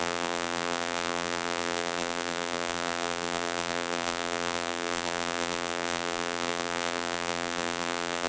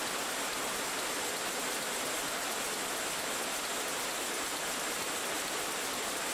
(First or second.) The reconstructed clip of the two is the first